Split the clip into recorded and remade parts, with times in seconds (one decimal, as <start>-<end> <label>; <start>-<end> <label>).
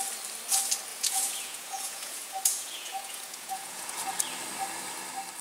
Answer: 0.0-0.9 recorded; 0.9-4.1 remade; 4.1-5.4 recorded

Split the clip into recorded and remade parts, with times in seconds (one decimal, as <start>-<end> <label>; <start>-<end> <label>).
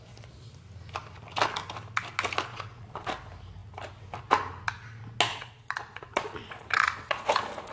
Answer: 0.0-2.5 recorded; 2.5-3.1 remade; 3.1-5.3 recorded; 5.3-7.3 remade; 7.3-7.7 recorded